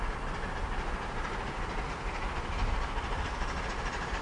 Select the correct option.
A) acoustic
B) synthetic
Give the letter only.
A